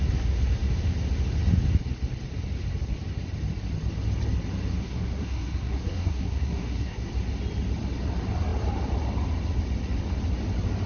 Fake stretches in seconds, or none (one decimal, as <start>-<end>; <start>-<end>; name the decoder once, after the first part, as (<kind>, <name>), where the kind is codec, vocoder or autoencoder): 4.8-7.1 (codec, SNAC)